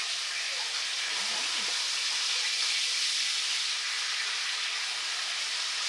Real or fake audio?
real